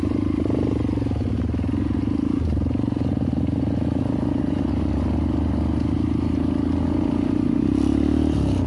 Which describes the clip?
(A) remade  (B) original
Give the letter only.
B